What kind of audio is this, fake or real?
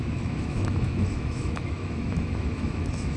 fake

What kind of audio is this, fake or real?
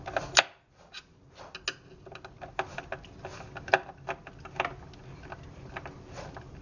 real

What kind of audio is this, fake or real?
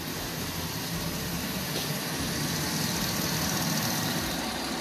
real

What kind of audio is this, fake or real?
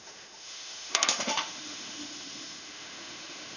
fake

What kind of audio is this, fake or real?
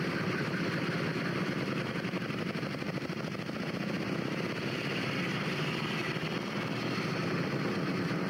real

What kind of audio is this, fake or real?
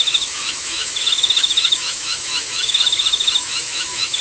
fake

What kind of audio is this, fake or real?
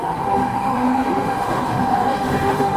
fake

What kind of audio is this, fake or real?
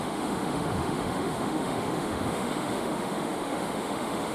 fake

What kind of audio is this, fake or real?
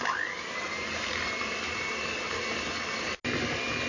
real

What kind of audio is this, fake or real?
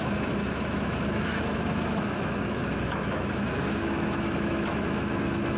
fake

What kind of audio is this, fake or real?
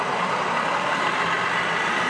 real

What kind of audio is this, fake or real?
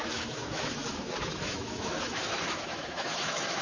fake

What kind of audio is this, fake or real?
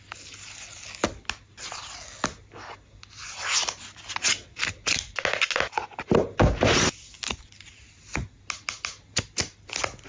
real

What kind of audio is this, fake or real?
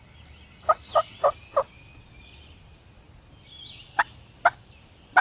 real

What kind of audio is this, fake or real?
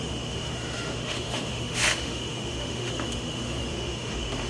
fake